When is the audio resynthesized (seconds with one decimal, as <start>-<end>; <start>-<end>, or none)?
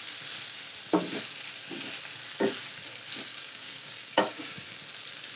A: 3.3-4.7